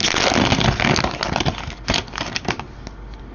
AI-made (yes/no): no